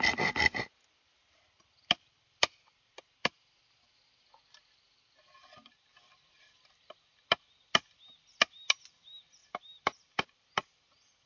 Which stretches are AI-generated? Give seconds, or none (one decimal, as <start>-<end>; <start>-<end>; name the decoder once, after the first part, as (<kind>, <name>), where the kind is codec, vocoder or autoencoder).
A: none